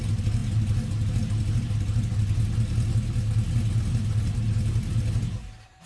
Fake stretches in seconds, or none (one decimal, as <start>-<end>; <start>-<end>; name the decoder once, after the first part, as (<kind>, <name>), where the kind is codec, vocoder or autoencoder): none